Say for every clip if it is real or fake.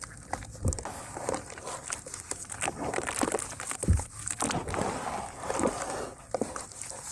real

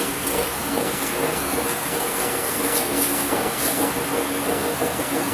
fake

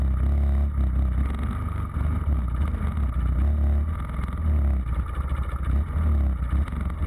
real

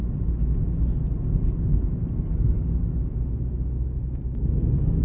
real